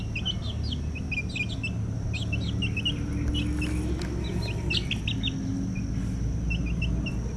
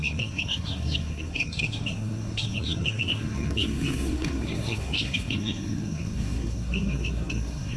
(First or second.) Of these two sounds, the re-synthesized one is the second